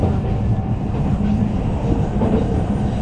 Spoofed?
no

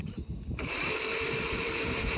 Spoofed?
yes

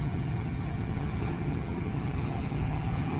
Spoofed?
yes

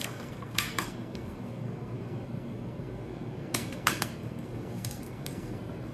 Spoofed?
yes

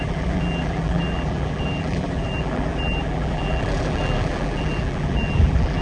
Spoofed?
yes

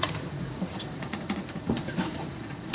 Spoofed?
yes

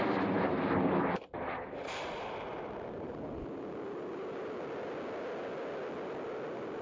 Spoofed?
no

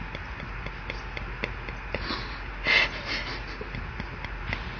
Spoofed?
no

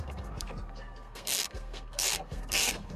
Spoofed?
yes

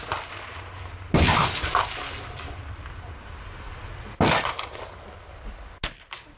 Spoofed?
no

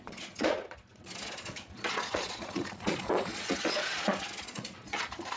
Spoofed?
yes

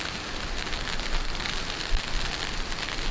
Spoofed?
no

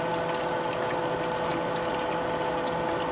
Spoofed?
no